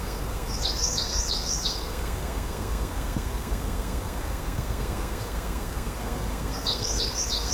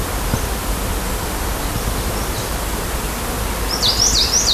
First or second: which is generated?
first